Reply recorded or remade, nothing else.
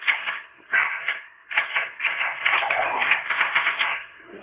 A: remade